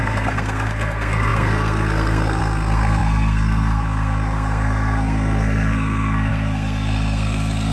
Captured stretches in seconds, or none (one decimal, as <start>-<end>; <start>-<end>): none